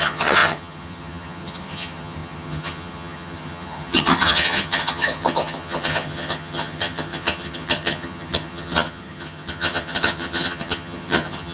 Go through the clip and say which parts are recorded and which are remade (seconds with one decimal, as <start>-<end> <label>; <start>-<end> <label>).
0.0-11.5 remade